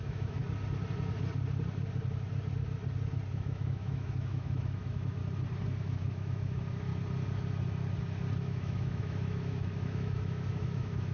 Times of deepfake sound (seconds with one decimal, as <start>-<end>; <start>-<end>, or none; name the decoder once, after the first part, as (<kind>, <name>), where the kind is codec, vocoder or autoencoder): 0.0-0.4 (autoencoder, DAC-VAE); 3.3-5.2; 5.8-6.9; 8.4-11.1